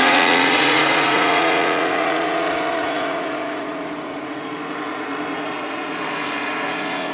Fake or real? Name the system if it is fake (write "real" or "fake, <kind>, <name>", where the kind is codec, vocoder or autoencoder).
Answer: fake, vocoder, Vocos